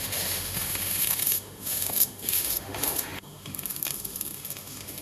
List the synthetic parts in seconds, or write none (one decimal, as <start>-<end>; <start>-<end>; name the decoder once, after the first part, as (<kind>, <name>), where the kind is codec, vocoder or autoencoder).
0.0-5.0 (autoencoder, DAC-VAE)